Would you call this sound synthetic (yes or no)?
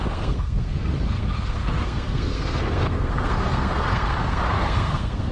yes